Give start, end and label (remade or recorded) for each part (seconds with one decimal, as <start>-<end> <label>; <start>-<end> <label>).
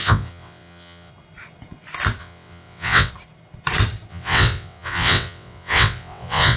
0.0-1.1 remade; 1.1-2.2 recorded; 2.2-3.1 remade; 3.1-4.1 recorded; 4.1-6.6 remade